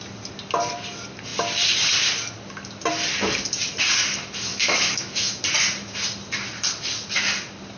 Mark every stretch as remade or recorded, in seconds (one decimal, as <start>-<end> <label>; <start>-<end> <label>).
0.0-4.5 recorded; 4.5-5.4 remade; 5.4-7.8 recorded